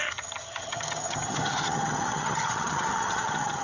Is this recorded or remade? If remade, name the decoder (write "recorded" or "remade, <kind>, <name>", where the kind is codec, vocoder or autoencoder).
remade, vocoder, HiFi-GAN